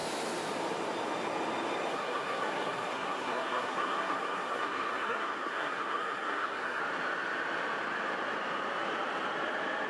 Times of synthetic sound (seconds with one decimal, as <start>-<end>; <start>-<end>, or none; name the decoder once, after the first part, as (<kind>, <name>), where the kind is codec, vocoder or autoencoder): 1.9-6.8 (codec, SNAC)